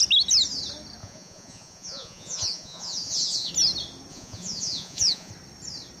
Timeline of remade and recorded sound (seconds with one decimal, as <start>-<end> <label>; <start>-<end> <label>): 0.0-1.0 recorded; 1.0-3.5 remade; 3.5-4.1 recorded; 4.1-5.3 remade; 5.3-6.0 recorded